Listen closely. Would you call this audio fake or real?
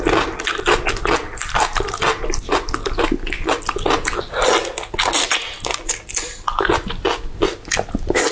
real